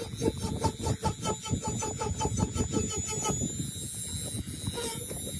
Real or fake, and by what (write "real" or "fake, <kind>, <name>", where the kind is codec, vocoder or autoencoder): real